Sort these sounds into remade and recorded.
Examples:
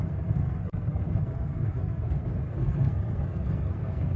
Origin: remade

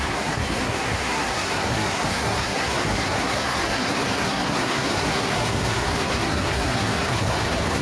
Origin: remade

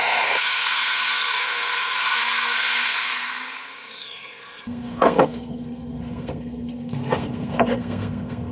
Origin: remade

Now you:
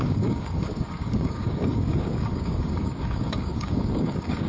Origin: remade